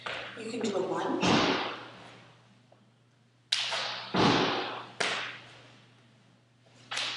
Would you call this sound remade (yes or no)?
no